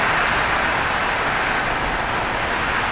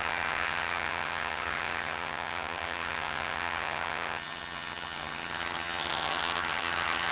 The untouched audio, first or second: first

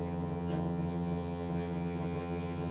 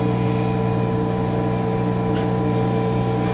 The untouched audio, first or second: second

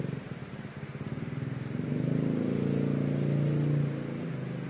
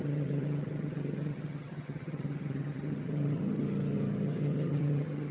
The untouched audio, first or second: first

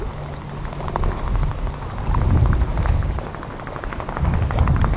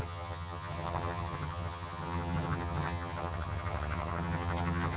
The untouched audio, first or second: first